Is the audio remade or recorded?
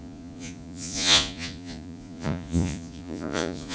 remade